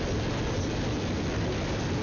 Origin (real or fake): real